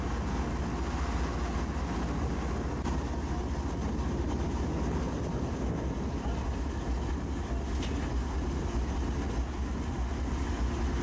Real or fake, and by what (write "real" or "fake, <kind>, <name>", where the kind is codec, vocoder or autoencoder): real